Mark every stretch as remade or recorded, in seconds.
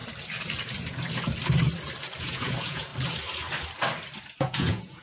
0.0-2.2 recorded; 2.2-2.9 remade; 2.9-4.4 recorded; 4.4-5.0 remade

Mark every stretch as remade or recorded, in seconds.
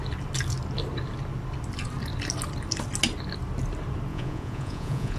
0.0-4.1 recorded; 4.1-5.2 remade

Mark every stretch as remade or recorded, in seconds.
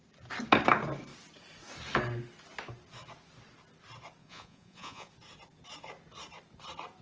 0.0-4.2 recorded; 4.2-5.1 remade; 5.1-7.0 recorded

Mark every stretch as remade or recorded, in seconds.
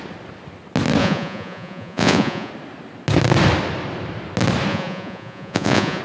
0.0-1.0 recorded; 1.0-2.5 remade; 2.5-4.7 recorded; 4.7-6.0 remade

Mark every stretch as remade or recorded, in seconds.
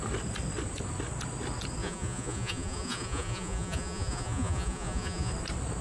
0.0-1.8 recorded; 1.8-5.3 remade; 5.3-5.8 recorded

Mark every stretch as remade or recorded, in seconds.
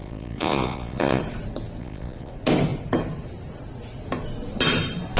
0.0-1.2 remade; 1.2-1.8 recorded; 1.8-2.3 remade; 2.3-5.2 recorded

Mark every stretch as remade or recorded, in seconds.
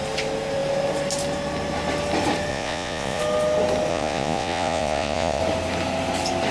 0.0-2.5 recorded; 2.5-3.2 remade; 3.2-3.9 recorded; 3.9-5.4 remade; 5.4-6.5 recorded